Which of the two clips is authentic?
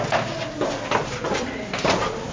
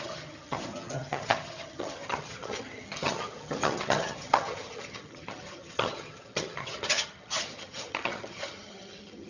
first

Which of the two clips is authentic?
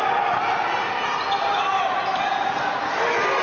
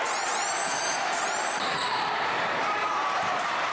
first